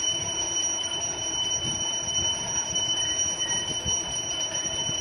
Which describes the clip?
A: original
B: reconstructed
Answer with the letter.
B